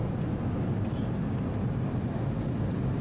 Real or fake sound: real